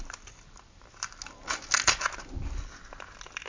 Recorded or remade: recorded